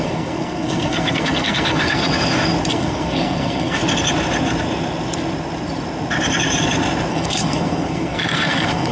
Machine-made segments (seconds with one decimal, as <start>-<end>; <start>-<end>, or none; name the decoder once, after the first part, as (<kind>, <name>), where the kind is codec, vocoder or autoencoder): 0.0-2.0 (codec, SNAC); 2.7-3.8; 7.1-8.9